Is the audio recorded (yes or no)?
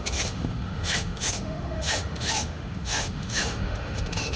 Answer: no